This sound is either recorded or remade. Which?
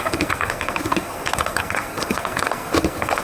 remade